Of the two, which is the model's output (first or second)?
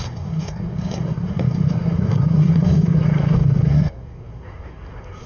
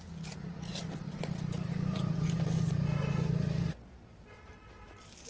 first